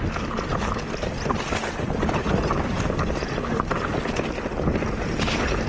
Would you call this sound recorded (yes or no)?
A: yes